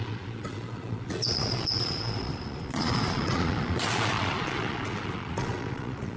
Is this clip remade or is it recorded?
remade